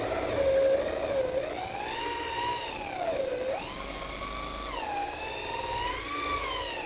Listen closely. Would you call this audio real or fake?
real